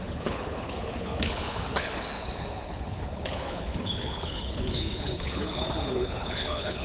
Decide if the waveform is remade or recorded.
remade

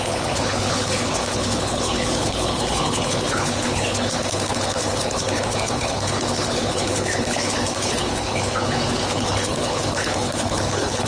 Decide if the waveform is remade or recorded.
remade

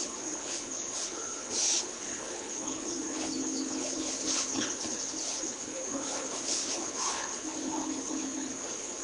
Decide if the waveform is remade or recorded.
remade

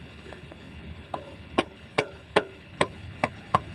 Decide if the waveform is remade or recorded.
remade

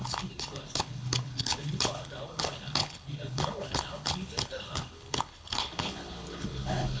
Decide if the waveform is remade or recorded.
remade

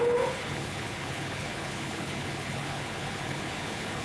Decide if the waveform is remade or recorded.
remade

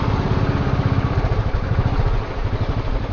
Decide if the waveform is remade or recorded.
recorded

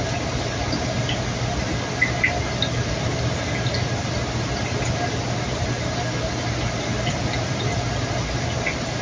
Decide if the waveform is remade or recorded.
recorded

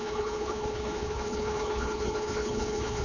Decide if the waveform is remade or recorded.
remade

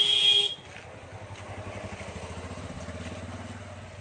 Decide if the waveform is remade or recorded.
recorded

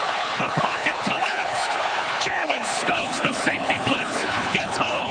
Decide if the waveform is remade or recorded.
remade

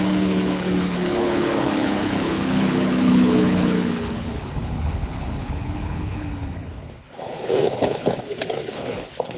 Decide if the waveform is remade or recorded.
remade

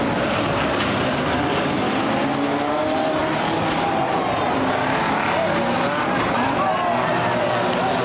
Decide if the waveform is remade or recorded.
recorded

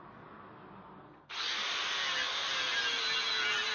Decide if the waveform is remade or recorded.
recorded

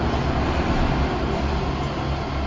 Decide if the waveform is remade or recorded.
recorded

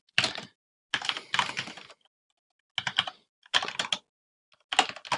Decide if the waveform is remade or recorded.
recorded